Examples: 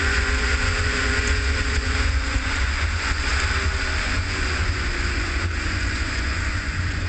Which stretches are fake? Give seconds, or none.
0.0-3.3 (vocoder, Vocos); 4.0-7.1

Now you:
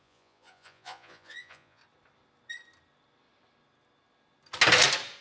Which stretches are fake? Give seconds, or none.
0.0-1.8 (vocoder, Vocos)

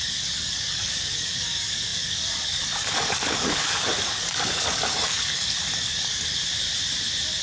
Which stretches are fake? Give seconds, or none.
0.0-6.4 (codec, DAC)

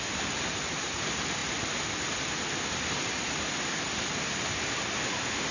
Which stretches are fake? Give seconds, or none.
none

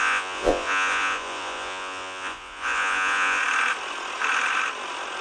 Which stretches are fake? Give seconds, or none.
0.0-3.4 (vocoder, Vocos)

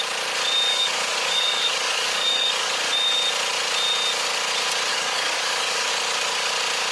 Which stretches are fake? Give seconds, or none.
0.7-2.7 (codec, DAC); 4.9-5.9